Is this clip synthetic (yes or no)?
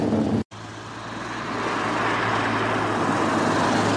no